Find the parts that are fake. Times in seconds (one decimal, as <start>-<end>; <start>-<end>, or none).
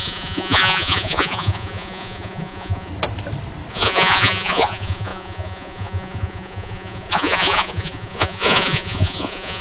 0.0-2.9; 3.7-9.6